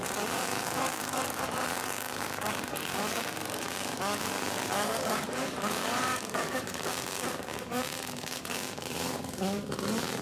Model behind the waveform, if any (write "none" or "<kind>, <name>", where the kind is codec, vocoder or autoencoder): codec, DAC